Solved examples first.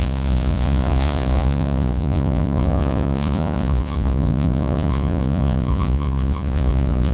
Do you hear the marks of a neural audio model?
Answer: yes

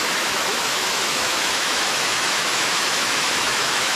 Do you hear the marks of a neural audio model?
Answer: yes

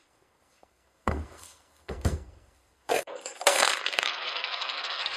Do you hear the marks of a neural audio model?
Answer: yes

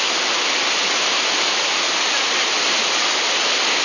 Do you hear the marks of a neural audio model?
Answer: no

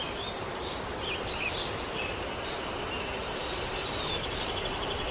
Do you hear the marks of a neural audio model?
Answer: no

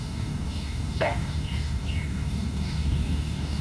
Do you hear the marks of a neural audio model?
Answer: yes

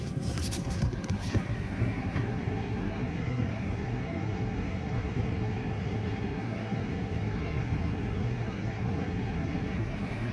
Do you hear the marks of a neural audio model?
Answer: yes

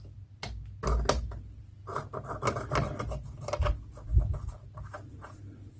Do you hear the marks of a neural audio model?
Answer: no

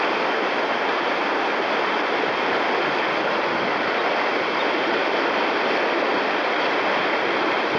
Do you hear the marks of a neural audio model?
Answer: no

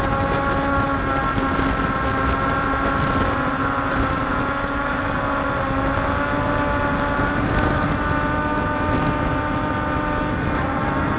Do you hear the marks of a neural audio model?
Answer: no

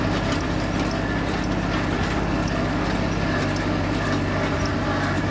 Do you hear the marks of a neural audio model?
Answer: no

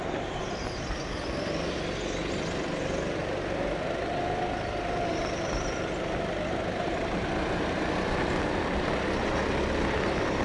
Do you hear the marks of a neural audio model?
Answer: no